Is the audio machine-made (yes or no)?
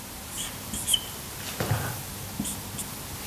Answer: no